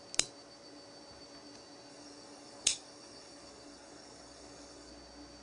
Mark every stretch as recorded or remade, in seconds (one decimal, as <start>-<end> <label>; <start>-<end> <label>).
0.0-1.9 recorded; 1.9-4.9 remade; 4.9-5.4 recorded